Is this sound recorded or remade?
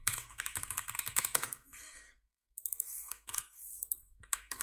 remade